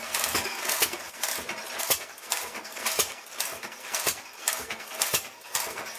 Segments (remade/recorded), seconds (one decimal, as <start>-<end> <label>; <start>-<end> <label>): 0.0-1.3 remade; 1.3-1.8 recorded; 1.8-6.0 remade